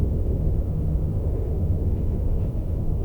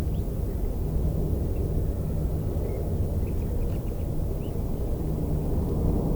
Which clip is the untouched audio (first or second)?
second